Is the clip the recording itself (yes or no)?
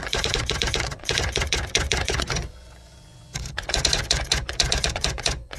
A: no